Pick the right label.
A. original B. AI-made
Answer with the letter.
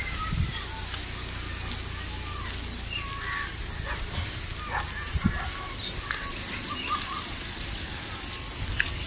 A